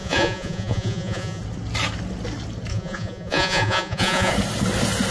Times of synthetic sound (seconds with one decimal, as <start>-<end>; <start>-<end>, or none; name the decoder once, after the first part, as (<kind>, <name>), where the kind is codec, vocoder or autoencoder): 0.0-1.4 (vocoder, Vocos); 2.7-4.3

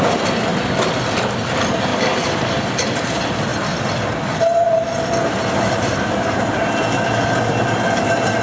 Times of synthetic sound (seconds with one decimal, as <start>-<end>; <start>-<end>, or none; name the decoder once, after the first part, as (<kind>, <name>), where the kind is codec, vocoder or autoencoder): none

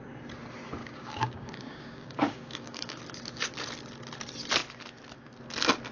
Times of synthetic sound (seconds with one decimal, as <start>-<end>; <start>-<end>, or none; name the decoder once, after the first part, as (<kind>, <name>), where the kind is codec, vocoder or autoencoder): 0.8-3.0 (codec, DAC)

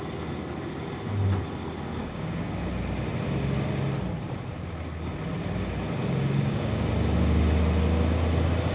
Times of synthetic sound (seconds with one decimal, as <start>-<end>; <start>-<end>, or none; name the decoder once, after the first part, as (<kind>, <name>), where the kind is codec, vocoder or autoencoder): 2.0-2.7 (codec, DAC); 6.0-6.9